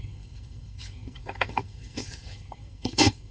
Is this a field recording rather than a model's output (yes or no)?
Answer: no